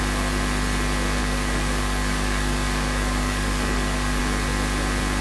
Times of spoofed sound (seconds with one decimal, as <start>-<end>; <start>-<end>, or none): 1.2-4.2